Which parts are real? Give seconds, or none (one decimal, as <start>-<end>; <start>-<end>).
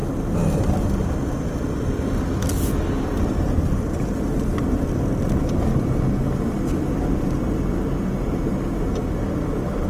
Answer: 0.0-9.9